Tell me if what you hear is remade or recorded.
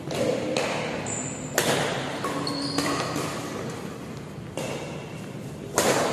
recorded